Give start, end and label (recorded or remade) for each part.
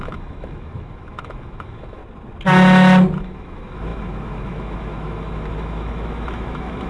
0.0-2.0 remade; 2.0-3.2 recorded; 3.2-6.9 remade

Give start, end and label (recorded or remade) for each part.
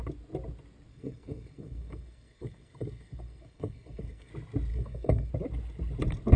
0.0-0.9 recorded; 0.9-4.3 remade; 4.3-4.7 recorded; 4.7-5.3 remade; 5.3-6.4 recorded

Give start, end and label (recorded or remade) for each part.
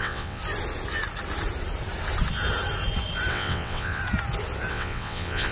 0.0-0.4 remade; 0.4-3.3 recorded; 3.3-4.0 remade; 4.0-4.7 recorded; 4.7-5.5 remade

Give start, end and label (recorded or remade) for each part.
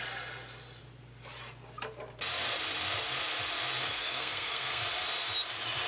0.0-3.8 recorded; 3.8-4.8 remade; 4.8-5.9 recorded